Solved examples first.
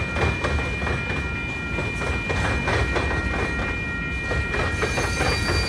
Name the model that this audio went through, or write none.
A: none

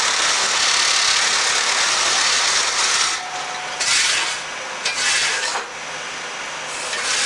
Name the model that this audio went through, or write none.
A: none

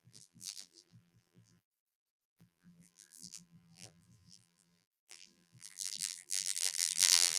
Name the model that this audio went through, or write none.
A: vocoder, BigVGAN v2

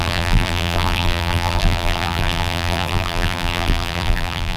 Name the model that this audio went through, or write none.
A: vocoder, BigVGAN v2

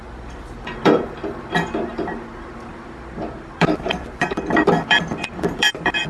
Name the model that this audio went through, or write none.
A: vocoder, BigVGAN v2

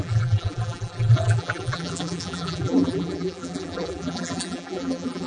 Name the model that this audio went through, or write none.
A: vocoder, BigVGAN v2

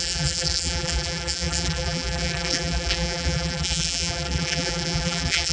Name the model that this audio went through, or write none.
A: vocoder, BigVGAN v2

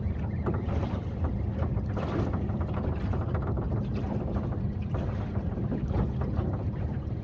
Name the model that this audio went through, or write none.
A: vocoder, BigVGAN v2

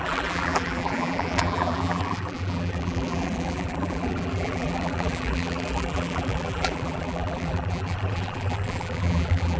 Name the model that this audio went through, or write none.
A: vocoder, BigVGAN v2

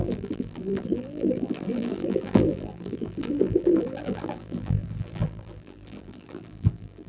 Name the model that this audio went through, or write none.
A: vocoder, BigVGAN v2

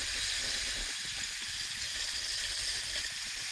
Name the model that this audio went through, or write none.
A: none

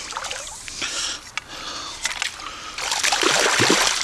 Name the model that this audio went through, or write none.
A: none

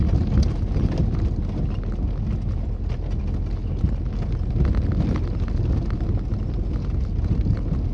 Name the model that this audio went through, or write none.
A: none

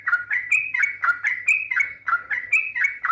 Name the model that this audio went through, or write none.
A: none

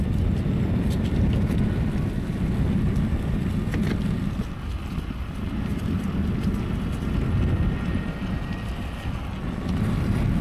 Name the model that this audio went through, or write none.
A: none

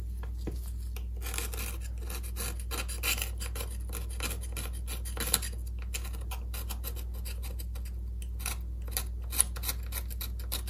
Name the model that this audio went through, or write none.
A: none